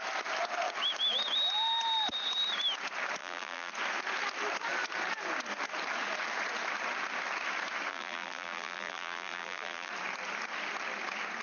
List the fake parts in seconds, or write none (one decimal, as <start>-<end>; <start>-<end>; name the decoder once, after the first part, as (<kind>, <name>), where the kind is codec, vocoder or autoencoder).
3.2-3.7 (vocoder, BigVGAN v2); 7.9-9.9